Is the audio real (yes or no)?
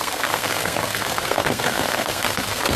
no